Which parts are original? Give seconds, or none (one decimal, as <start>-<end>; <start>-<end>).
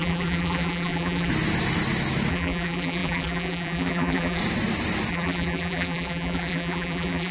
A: 1.3-2.3; 4.4-5.1